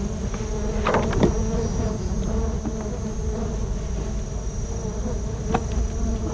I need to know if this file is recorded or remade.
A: recorded